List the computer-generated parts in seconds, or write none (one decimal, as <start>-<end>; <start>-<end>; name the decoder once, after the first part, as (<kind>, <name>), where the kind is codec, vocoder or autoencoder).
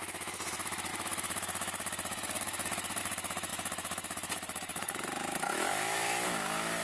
0.0-6.8 (autoencoder, DAC-VAE)